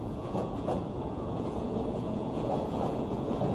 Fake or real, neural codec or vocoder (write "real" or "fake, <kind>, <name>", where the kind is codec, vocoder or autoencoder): fake, vocoder, Vocos